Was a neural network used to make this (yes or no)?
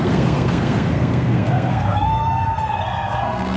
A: yes